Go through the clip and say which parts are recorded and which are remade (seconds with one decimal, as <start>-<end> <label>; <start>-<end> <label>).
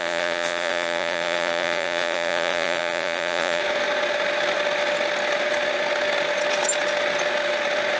0.0-3.6 remade; 3.6-8.0 recorded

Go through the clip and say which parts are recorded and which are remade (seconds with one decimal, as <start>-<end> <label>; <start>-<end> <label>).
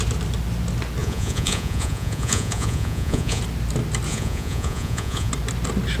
0.0-1.0 recorded; 1.0-3.4 remade; 3.4-4.1 recorded; 4.1-5.3 remade; 5.3-6.0 recorded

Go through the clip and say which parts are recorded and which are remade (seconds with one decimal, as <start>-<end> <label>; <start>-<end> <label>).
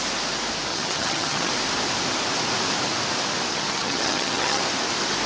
0.0-0.7 recorded; 0.7-1.5 remade; 1.5-3.5 recorded; 3.5-4.6 remade; 4.6-5.3 recorded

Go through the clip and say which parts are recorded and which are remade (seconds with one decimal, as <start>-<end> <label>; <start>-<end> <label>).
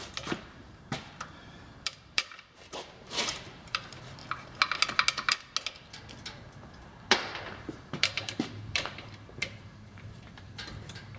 0.0-4.2 remade; 4.2-6.8 recorded; 6.8-11.2 remade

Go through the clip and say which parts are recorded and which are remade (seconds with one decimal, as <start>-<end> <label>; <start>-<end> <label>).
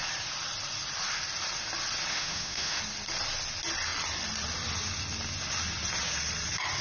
0.0-2.1 recorded; 2.1-2.8 remade; 2.8-6.8 recorded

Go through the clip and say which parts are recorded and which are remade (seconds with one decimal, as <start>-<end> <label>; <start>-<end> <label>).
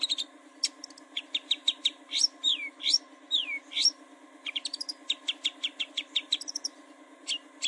0.0-7.7 recorded